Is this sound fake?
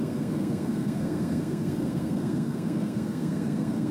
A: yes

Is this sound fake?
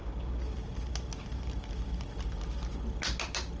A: no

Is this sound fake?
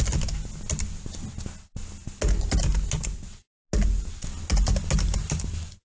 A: no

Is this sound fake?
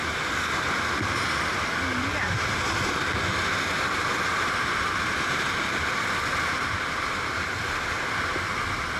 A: no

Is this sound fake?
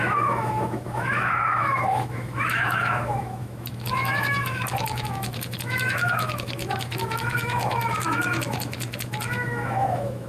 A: yes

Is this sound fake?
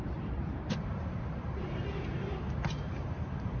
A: yes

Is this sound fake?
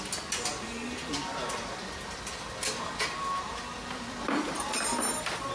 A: no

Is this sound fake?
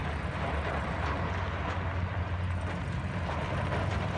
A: no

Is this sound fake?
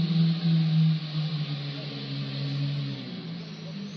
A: no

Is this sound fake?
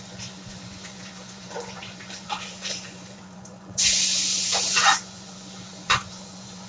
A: yes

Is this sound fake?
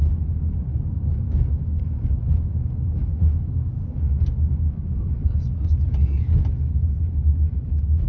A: no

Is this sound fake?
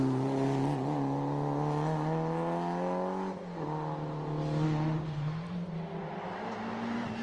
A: no